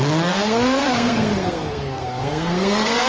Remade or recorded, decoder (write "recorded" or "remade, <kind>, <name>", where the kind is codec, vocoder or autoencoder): remade, codec, SNAC